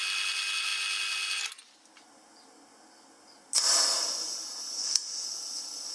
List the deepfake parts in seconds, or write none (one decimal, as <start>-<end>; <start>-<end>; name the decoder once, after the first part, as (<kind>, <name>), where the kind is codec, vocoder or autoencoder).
none